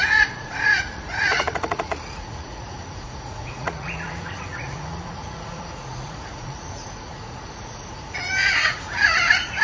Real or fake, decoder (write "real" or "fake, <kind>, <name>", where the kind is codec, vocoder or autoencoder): fake, vocoder, Vocos